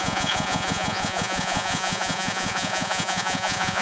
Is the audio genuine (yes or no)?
no